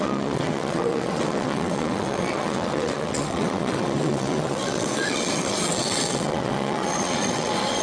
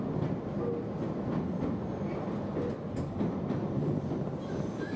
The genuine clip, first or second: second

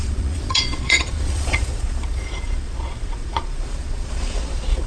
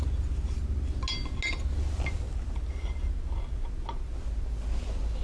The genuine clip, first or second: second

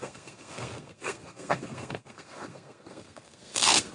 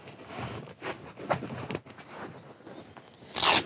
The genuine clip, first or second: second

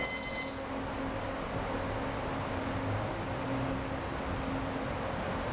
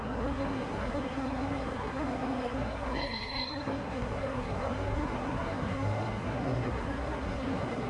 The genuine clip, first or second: first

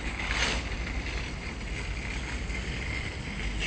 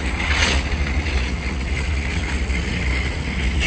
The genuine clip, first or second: first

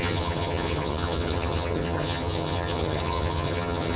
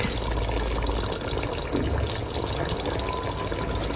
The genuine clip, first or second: second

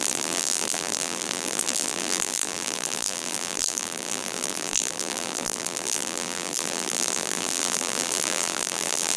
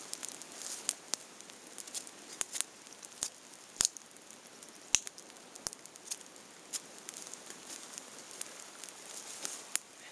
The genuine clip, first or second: second